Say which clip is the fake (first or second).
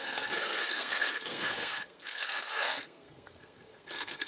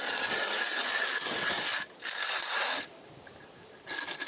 first